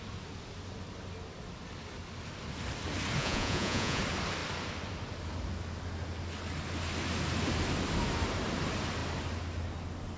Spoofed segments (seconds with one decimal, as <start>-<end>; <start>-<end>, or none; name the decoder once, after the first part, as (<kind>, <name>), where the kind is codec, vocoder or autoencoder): 3.2-4.0 (vocoder, Vocos)